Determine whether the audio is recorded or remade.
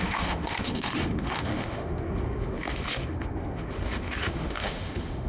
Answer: remade